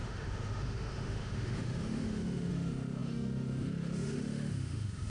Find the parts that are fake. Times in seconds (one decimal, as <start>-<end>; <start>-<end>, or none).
0.0-5.1